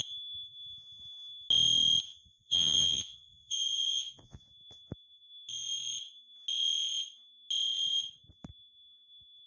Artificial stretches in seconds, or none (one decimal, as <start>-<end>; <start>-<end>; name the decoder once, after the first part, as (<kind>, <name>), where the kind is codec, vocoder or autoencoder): 2.1-4.4 (vocoder, Vocos)